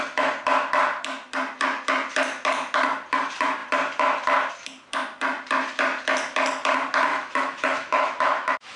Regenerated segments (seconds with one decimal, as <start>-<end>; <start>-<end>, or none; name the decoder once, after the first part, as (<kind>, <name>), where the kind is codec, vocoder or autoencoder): 7.1-8.8 (autoencoder, DAC-VAE)